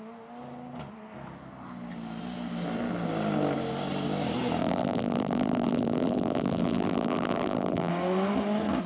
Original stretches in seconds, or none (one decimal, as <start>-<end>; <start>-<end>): 0.0-4.6; 7.9-8.9